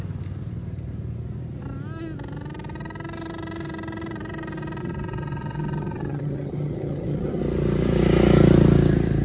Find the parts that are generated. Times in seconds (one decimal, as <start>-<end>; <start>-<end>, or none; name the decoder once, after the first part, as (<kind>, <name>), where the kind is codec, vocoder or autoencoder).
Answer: 4.8-7.4 (vocoder, HiFi-GAN)